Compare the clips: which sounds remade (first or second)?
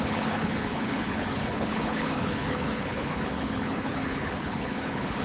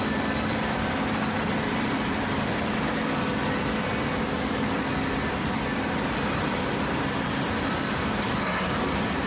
first